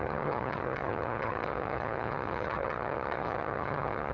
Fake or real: fake